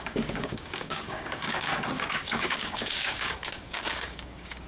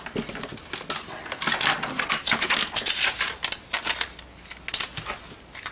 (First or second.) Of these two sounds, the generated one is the first